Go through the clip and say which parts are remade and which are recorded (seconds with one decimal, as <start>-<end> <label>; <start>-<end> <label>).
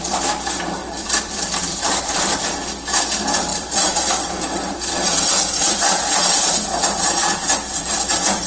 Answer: 0.0-0.8 recorded; 0.8-2.5 remade; 2.5-3.5 recorded; 3.5-8.5 remade